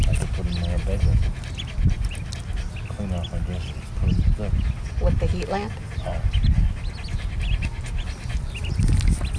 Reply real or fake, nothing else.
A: real